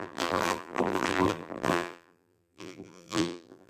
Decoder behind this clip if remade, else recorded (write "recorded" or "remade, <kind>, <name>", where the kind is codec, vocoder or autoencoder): remade, vocoder, BigVGAN v2